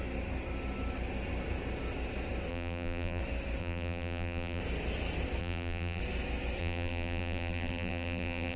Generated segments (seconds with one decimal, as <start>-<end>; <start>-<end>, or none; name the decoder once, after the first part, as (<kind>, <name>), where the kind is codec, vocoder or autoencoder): 2.5-3.2 (vocoder, BigVGAN v2); 3.6-4.6; 5.4-6.0; 6.6-8.6